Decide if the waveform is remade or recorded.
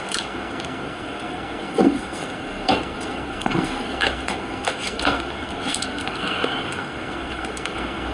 remade